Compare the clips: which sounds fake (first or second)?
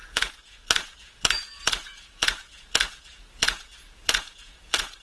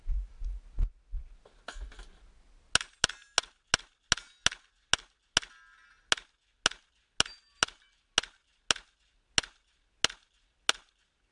first